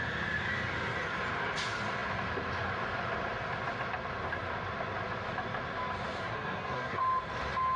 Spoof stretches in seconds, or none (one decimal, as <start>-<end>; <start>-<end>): 6.2-7.0